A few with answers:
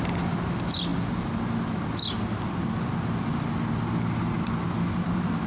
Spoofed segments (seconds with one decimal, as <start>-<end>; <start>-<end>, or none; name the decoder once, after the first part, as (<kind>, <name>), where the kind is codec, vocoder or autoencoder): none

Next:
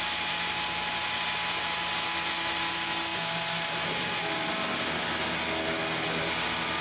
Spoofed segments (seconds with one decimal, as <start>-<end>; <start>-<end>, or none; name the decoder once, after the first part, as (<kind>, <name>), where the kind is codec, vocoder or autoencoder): none

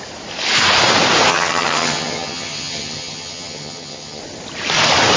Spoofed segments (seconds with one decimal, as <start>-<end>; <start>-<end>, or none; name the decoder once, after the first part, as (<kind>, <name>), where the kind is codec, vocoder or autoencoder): 1.3-4.2 (vocoder, HiFi-GAN)

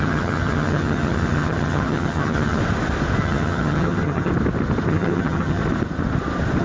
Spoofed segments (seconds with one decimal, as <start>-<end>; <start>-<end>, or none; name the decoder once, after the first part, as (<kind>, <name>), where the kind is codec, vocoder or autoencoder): 0.0-2.6 (vocoder, HiFi-GAN); 3.2-4.3; 4.9-5.6